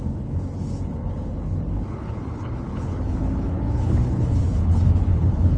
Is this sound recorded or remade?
remade